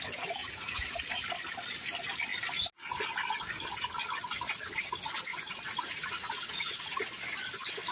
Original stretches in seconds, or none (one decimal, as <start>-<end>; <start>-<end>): 0.0-0.4; 1.0-5.3; 7.0-7.9

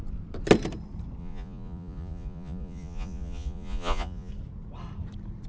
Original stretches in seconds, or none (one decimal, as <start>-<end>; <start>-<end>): 0.0-1.2; 4.3-5.5

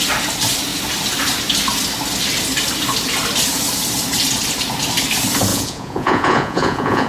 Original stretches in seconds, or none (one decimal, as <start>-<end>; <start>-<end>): 0.0-5.5

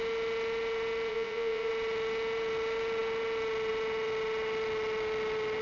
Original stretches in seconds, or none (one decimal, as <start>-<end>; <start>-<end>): 0.0-1.1; 1.7-5.6

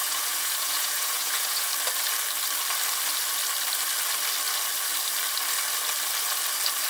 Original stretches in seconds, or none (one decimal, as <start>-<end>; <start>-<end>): 1.7-6.9

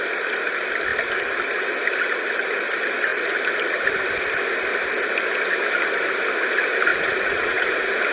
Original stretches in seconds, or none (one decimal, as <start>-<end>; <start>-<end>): 0.0-6.9